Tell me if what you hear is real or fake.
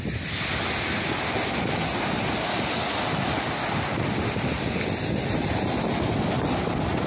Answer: real